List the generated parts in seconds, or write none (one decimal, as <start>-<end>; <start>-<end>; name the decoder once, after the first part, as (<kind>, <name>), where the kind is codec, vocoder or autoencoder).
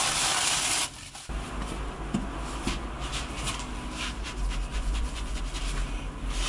4.7-5.4 (vocoder, Vocos)